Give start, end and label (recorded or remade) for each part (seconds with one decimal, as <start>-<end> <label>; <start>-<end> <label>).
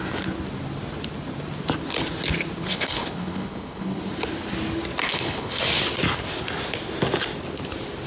0.0-2.6 recorded; 2.6-4.0 remade; 4.0-5.1 recorded; 5.1-5.6 remade; 5.6-8.1 recorded